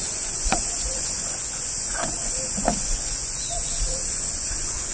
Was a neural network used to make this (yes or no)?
yes